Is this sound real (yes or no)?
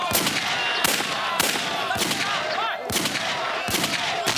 yes